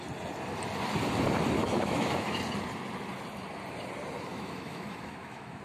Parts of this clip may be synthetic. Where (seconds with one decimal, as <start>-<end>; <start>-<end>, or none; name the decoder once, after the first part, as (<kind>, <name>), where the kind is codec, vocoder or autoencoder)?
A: 1.6-2.4 (autoencoder, DAC-VAE); 4.3-5.6